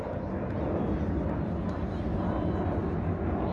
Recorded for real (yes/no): yes